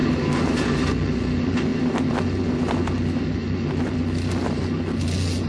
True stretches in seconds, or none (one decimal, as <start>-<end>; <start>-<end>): 0.0-5.5